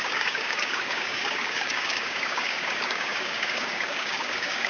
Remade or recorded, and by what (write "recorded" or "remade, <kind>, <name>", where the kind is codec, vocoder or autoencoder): remade, codec, DAC